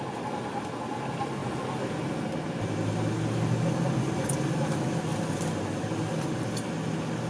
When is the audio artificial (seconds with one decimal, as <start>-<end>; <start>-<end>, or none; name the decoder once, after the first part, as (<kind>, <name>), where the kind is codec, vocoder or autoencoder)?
none